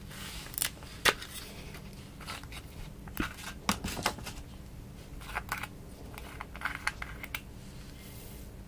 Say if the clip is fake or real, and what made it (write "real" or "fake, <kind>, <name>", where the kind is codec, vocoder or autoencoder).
real